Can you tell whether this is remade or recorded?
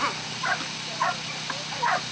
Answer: recorded